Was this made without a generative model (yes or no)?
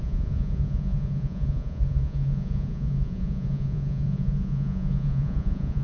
no